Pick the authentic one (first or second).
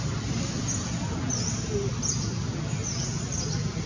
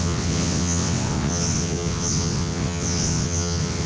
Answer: first